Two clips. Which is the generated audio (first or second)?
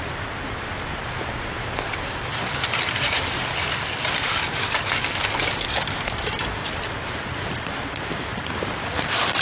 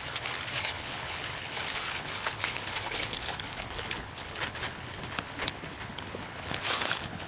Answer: second